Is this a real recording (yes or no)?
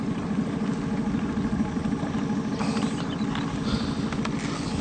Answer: yes